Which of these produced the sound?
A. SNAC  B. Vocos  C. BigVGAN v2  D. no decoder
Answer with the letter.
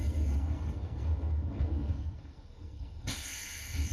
A